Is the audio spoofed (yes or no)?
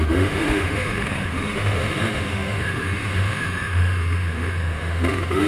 yes